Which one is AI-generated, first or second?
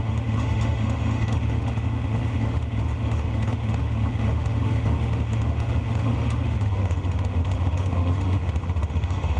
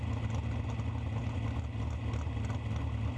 first